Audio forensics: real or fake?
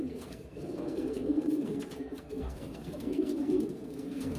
fake